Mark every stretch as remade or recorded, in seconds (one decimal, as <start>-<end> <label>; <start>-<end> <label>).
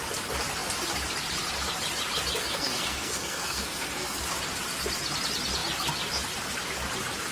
0.0-2.4 recorded; 2.4-4.2 remade; 4.2-7.3 recorded